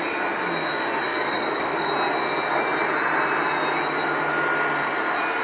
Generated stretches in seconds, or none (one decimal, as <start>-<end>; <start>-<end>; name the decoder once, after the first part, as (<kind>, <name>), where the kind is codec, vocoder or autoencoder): 1.1-1.9 (codec, DAC)